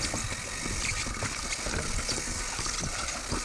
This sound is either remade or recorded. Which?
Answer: recorded